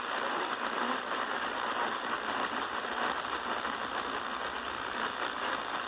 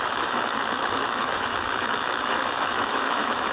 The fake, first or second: second